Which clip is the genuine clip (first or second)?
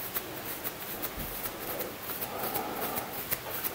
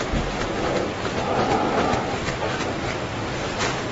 first